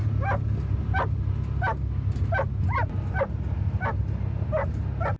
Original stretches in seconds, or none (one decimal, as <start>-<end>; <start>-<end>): 0.0-5.2